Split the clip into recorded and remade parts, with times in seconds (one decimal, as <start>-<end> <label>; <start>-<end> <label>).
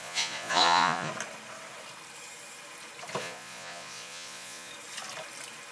0.0-1.1 remade; 1.1-3.2 recorded; 3.2-4.7 remade; 4.7-5.7 recorded